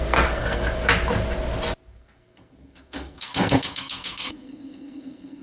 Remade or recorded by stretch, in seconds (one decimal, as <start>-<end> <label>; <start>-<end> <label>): 0.0-0.6 remade; 0.6-1.9 recorded; 1.9-5.4 remade